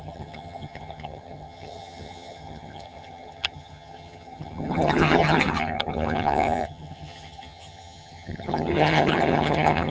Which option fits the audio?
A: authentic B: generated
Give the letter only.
B